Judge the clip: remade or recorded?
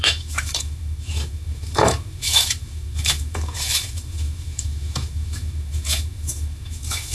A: remade